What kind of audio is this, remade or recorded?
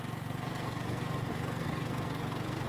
remade